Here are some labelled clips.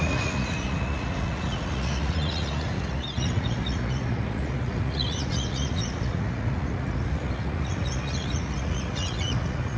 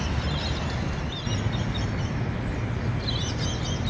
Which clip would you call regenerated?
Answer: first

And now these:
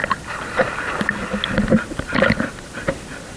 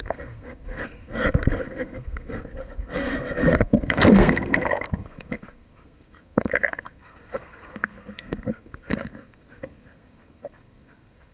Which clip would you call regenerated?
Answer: second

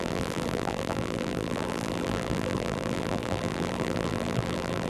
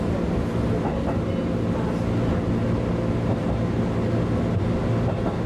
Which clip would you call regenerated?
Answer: first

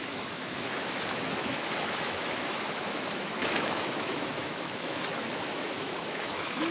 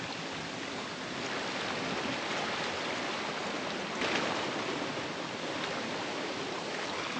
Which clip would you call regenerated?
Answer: first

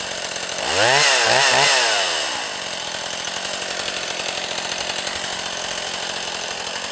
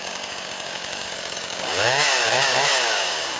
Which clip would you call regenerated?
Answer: second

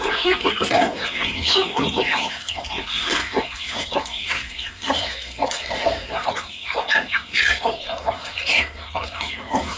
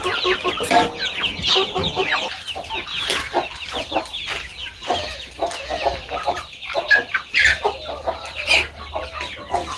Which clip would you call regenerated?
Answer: first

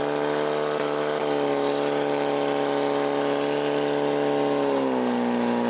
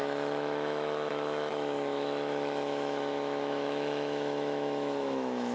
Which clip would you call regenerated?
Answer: second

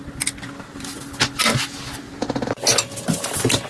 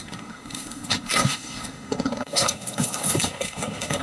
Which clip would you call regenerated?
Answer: second